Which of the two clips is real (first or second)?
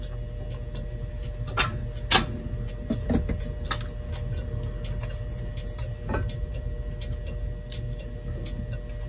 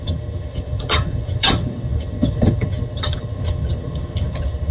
first